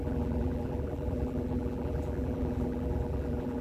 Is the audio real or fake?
fake